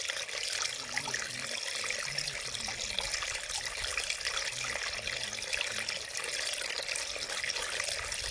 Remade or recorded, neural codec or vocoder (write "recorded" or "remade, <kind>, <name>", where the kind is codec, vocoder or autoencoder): recorded